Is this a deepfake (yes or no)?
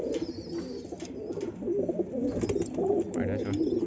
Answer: no